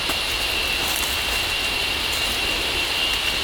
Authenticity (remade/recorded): recorded